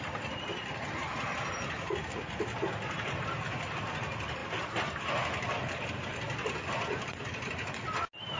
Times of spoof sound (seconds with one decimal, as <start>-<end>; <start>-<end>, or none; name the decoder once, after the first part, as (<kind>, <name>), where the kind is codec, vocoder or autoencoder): none